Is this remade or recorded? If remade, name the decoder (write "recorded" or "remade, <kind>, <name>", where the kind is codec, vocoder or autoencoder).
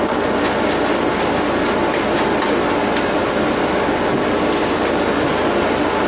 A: recorded